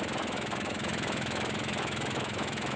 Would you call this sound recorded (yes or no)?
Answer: no